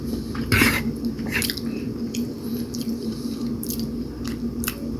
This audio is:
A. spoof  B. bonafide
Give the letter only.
A